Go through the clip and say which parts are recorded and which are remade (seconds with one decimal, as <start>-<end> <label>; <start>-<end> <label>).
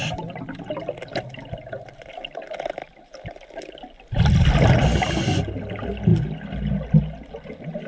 0.0-0.9 remade; 0.9-7.9 recorded